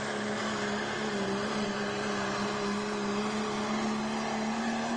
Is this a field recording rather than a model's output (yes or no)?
yes